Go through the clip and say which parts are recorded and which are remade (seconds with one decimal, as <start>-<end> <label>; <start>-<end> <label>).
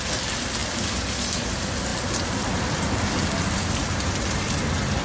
0.0-5.0 recorded